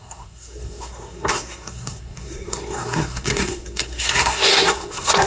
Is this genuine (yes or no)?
no